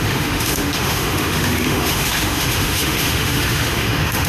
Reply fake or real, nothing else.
fake